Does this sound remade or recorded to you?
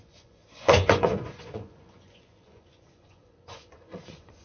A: remade